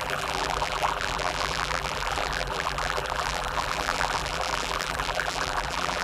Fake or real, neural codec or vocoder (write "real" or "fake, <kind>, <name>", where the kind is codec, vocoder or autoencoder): fake, vocoder, BigVGAN v2